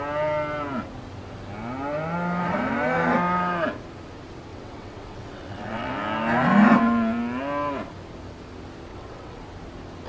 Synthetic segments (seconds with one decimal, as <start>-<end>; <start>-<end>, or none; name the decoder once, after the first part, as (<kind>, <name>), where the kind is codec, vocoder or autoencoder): 4.5-5.9 (vocoder, WaveNeXt); 8.9-9.4